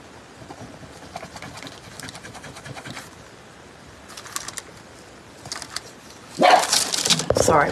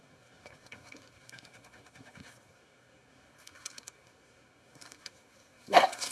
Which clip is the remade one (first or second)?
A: second